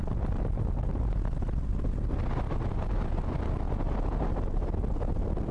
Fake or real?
real